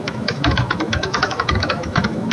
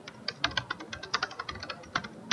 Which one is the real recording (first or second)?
second